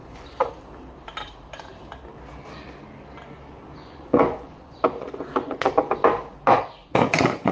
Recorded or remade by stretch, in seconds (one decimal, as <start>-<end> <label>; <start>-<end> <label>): 0.0-0.5 remade; 0.5-3.8 recorded; 3.8-5.7 remade; 5.7-6.8 recorded; 6.8-7.5 remade